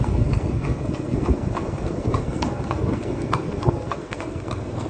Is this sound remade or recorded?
remade